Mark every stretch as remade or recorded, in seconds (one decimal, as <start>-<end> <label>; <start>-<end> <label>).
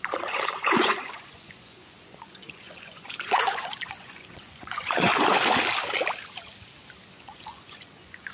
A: 0.0-5.1 remade; 5.1-7.1 recorded; 7.1-8.3 remade